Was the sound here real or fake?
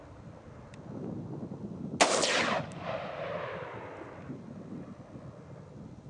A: real